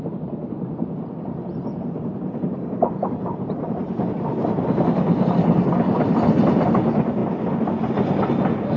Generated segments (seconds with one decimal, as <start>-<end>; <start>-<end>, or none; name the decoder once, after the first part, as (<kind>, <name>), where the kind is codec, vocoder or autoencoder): none